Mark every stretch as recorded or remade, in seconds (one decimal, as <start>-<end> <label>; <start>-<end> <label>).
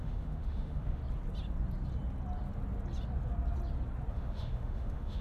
0.0-1.0 remade; 1.0-4.1 recorded; 4.1-5.2 remade